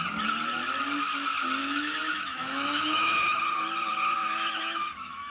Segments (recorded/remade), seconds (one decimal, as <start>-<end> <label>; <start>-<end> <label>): 0.0-1.6 recorded; 1.6-3.4 remade; 3.4-4.2 recorded; 4.2-5.3 remade